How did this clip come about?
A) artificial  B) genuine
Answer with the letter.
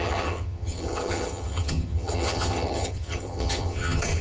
A